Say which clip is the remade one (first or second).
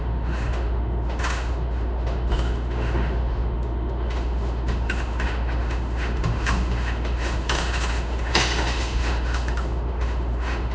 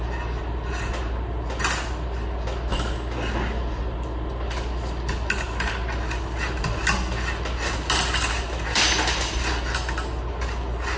first